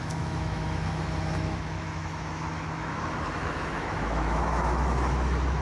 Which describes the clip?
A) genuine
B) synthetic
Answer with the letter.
B